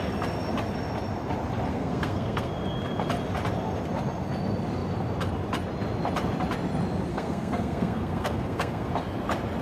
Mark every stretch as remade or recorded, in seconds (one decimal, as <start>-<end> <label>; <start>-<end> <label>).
0.0-1.7 recorded; 1.7-2.5 remade; 2.5-7.1 recorded; 7.1-8.9 remade; 8.9-9.6 recorded